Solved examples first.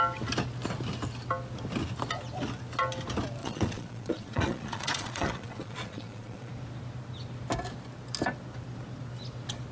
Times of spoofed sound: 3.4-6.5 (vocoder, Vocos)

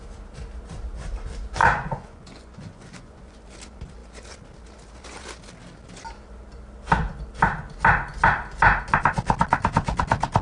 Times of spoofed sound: 1.6-3.4 (vocoder, Vocos)

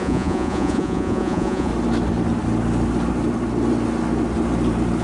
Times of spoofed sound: 0.0-1.7 (vocoder, Vocos)

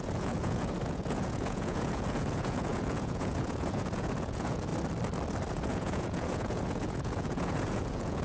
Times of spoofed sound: 0.0-4.7 (vocoder, Vocos); 5.5-8.2

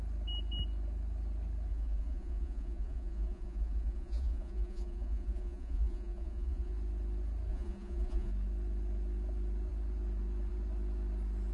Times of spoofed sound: 1.7-6.7 (vocoder, Vocos); 7.5-8.3

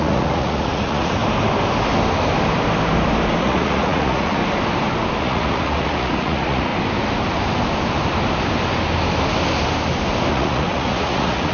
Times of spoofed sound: 0.0-1.2 (vocoder, Vocos); 3.4-4.4; 5.2-6.7; 10.3-11.5

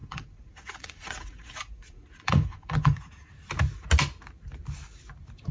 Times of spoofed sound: 0.0-3.3 (vocoder, Vocos)